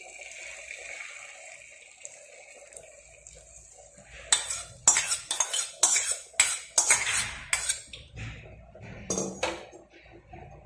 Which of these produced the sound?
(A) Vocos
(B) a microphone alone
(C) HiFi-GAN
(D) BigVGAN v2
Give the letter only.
B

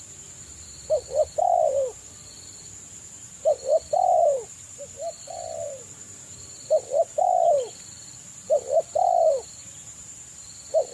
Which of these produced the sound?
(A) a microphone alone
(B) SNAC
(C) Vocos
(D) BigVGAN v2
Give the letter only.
D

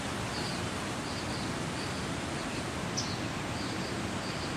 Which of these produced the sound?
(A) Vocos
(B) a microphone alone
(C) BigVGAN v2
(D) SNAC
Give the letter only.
B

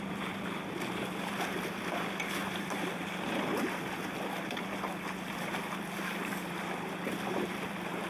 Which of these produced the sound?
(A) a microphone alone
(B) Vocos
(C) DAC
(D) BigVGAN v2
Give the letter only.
A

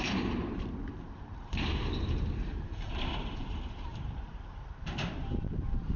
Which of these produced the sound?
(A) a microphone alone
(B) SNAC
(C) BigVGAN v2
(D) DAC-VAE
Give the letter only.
C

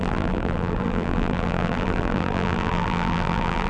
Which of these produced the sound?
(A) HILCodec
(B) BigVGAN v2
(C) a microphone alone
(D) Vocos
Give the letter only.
B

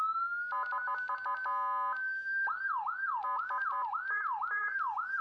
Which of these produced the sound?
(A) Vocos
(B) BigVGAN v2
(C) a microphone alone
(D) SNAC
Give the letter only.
C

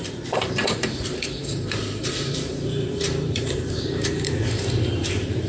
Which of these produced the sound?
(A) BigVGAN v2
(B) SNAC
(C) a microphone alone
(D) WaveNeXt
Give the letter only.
A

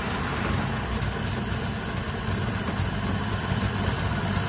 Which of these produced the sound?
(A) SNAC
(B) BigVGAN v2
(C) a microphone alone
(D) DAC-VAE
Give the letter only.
B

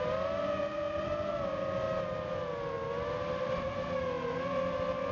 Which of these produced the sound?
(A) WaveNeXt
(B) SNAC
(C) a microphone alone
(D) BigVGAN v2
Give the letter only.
C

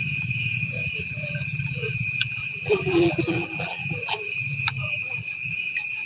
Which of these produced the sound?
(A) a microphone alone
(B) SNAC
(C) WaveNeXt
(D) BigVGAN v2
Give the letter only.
D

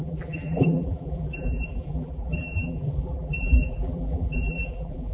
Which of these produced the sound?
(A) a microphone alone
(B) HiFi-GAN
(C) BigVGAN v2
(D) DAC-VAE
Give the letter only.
C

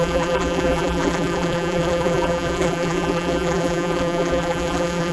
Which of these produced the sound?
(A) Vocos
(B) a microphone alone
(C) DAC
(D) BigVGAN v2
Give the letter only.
D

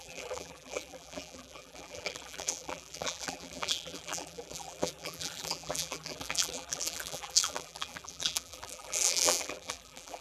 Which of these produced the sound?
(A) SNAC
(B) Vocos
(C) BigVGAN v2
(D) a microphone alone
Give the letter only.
C